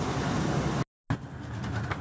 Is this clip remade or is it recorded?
recorded